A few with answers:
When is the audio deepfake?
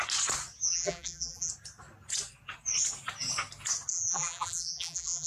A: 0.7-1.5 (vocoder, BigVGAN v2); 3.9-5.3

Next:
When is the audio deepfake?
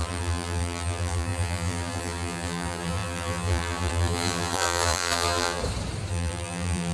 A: 0.0-5.6 (vocoder, BigVGAN v2); 6.1-6.9